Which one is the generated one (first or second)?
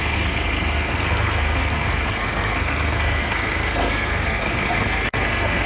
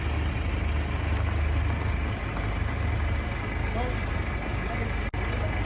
first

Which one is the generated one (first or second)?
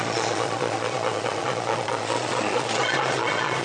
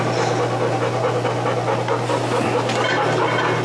first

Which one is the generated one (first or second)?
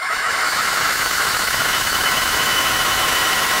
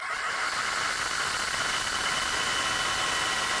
first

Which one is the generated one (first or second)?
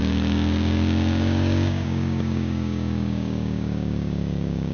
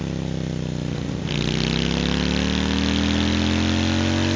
first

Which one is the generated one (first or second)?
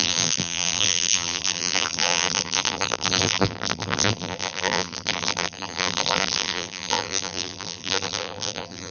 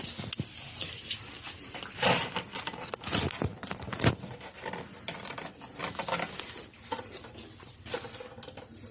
first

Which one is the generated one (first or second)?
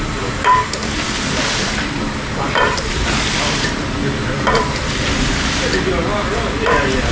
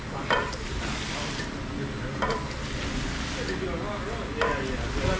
first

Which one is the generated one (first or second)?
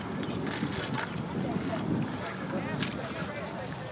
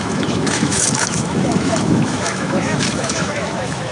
second